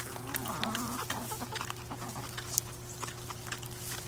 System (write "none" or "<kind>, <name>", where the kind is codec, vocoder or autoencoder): none